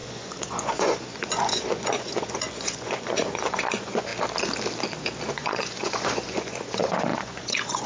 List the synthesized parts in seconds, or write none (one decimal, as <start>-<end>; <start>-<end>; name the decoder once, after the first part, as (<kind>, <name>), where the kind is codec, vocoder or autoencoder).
0.0-4.1 (vocoder, Vocos); 5.3-7.9

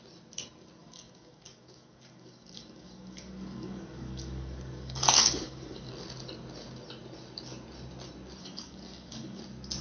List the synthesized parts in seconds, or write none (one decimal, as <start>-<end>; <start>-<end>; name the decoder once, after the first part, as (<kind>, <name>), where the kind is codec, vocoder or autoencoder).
0.8-5.9 (codec, DAC); 8.4-9.4

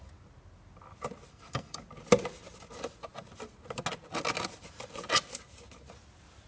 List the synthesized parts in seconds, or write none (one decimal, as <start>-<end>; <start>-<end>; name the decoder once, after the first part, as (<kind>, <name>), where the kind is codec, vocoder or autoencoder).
1.3-1.8 (codec, SNAC)

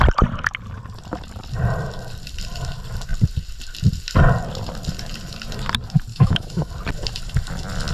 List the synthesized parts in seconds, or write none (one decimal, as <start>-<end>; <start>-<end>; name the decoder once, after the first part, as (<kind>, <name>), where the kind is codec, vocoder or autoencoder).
6.1-6.7 (autoencoder, DAC-VAE)